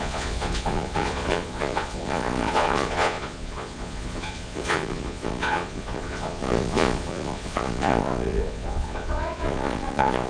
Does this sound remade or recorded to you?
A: remade